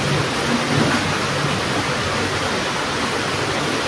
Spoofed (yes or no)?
no